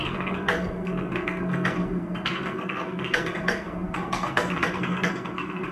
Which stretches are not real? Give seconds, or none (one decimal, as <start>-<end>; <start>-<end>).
0.0-5.7